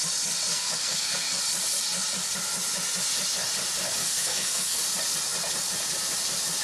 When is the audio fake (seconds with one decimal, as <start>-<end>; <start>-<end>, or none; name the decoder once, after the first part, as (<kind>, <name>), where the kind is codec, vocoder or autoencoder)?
0.5-1.4 (codec, SNAC); 4.0-4.8